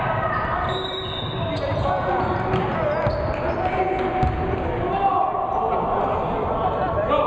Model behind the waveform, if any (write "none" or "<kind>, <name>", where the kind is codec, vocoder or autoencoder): none